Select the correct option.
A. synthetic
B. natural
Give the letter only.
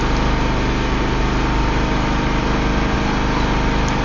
B